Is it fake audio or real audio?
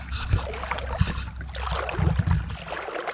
real